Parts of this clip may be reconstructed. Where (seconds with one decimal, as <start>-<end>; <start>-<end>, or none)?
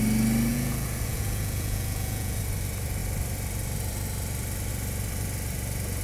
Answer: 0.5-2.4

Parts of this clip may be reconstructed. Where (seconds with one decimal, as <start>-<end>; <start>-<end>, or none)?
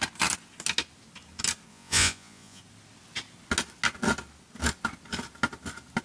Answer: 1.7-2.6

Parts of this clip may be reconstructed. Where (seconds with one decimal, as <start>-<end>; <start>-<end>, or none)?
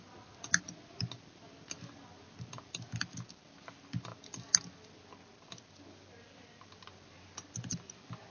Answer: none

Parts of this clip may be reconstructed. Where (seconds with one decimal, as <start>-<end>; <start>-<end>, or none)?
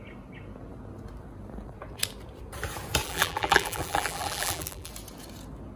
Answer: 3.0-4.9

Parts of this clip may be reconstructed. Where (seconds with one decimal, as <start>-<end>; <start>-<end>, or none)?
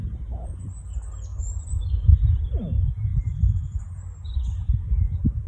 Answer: none